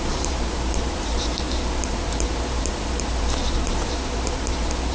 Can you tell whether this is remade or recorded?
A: remade